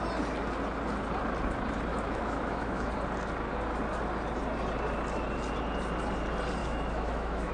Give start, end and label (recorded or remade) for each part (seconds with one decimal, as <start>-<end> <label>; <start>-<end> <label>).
0.0-1.9 recorded; 1.9-2.9 remade; 2.9-6.6 recorded; 6.6-7.5 remade